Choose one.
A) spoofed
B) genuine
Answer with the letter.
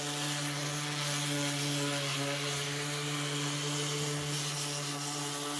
B